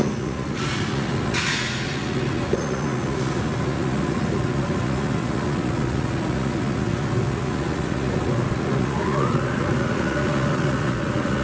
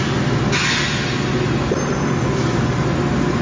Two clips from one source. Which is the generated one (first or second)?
first